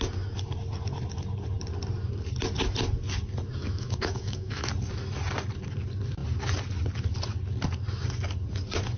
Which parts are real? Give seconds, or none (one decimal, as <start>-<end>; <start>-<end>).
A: 0.0-3.6; 4.7-9.0